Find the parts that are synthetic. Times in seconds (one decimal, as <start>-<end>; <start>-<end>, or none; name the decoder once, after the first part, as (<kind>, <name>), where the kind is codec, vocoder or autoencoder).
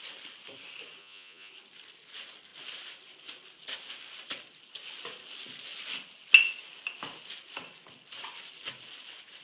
1.0-1.5 (vocoder, Vocos)